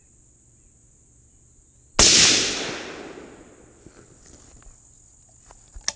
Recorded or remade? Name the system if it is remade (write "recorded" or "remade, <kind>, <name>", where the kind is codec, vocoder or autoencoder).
recorded